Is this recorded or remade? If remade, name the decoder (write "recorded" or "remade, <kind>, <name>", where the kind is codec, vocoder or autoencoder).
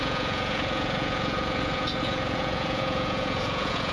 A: remade, vocoder, Vocos